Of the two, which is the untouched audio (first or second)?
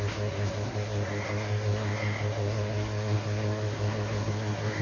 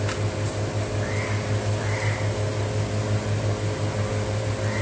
second